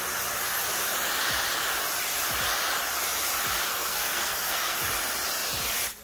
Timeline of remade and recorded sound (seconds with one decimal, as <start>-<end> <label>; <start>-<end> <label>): 0.0-3.6 recorded; 3.6-4.9 remade; 4.9-6.0 recorded

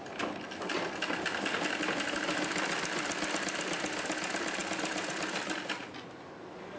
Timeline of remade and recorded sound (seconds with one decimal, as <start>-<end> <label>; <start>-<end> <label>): 0.0-6.8 recorded

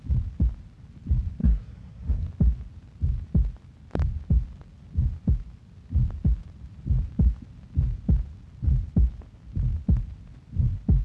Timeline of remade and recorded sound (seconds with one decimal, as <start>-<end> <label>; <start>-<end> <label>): 0.0-1.4 recorded; 1.4-2.3 remade; 2.3-11.0 recorded

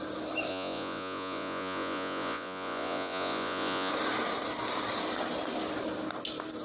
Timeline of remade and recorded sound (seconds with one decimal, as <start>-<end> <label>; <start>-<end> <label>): 0.0-0.5 recorded; 0.5-3.9 remade; 3.9-6.6 recorded